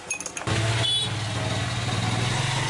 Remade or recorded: recorded